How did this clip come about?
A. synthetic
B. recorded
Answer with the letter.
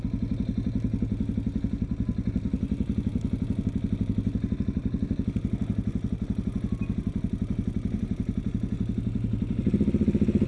B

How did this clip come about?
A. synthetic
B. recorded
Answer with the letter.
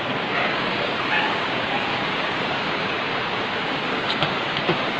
A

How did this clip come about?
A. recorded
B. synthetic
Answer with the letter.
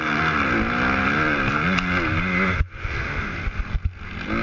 A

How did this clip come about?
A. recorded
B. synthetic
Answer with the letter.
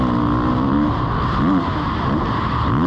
A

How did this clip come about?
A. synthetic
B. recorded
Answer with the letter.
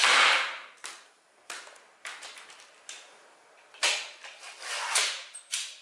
B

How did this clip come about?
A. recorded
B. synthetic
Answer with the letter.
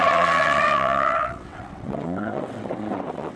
B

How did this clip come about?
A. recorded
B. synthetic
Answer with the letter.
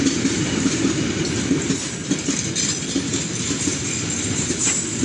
A